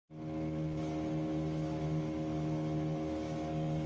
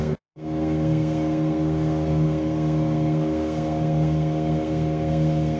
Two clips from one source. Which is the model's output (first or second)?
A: second